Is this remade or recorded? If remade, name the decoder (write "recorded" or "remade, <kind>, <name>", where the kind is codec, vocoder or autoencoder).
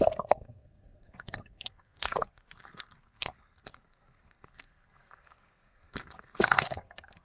remade, codec, SNAC